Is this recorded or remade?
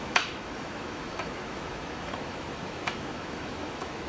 remade